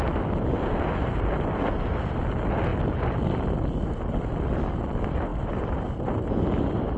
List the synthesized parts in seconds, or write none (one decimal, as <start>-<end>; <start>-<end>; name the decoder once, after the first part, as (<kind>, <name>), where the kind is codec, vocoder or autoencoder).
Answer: none